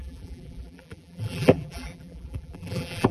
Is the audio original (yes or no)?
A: no